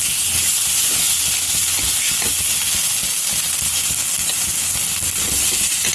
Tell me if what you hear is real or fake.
real